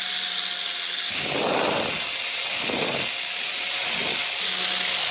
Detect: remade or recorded recorded